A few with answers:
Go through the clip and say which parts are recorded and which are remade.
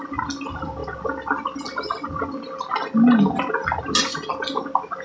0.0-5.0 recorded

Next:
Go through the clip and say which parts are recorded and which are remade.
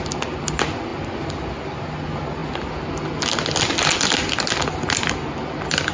0.0-5.9 recorded